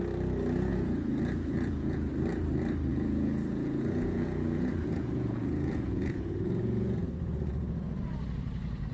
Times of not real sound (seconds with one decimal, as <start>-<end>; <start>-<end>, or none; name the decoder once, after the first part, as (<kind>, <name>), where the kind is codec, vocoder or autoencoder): 0.7-2.1 (vocoder, Vocos); 2.9-8.0